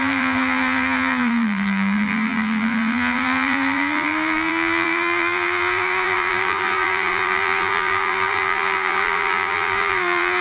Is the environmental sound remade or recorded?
remade